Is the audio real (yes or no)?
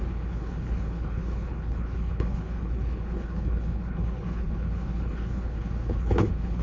no